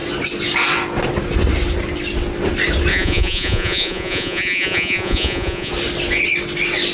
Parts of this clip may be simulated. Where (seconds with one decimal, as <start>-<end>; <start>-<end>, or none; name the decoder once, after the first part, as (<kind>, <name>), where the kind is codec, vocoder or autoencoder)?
2.9-5.7 (vocoder, Vocos)